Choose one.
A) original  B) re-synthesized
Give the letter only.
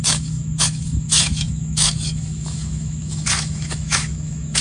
B